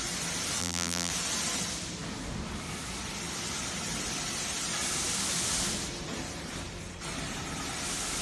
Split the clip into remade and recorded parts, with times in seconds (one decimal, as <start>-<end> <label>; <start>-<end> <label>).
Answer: 0.0-0.6 recorded; 0.6-1.1 remade; 1.1-8.2 recorded